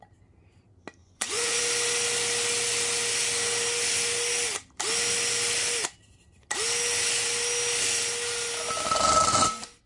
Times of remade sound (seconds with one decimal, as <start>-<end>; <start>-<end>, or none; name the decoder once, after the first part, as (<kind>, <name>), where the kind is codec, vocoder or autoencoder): 1.0-1.6 (vocoder, Vocos)